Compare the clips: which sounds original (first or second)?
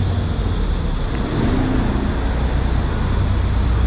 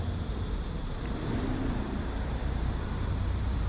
first